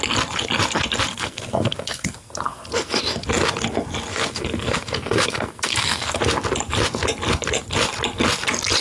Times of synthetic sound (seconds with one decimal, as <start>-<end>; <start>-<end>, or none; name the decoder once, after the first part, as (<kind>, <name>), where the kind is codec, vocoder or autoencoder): 1.1-3.0 (codec, SNAC); 4.1-6.2

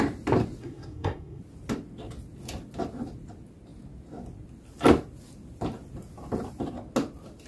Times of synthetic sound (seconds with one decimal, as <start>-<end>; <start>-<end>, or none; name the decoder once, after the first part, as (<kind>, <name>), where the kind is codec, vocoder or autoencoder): 0.6-1.4 (codec, SNAC)

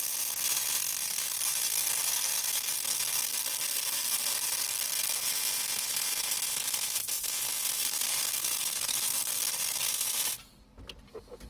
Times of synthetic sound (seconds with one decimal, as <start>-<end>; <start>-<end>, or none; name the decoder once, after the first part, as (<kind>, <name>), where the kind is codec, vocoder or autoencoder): 1.1-5.3 (codec, SNAC); 7.8-9.9

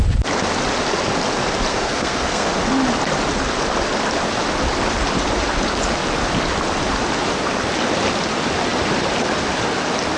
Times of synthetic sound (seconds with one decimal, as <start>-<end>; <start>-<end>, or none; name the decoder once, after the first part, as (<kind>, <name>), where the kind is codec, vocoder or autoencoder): 1.7-2.5 (codec, SNAC)

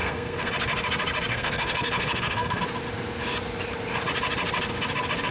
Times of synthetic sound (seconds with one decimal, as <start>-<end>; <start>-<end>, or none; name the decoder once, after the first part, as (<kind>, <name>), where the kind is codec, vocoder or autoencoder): 0.0-0.5 (codec, SNAC); 1.3-2.6

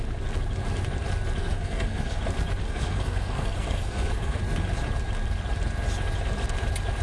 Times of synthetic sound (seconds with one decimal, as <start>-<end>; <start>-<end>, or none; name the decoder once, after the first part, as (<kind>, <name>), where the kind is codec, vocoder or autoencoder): 1.4-2.2 (codec, SNAC); 2.6-4.4

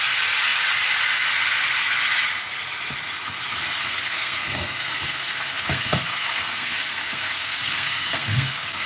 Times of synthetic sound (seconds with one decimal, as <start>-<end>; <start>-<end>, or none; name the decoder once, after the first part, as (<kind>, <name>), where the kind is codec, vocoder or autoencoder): 3.8-8.9 (codec, SNAC)

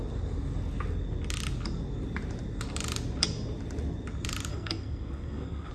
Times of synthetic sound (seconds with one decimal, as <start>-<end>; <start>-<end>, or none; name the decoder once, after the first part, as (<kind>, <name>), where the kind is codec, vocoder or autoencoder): 4.5-5.7 (codec, SNAC)